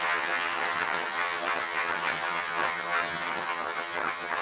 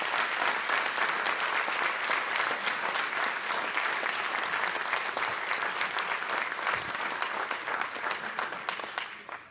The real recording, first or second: second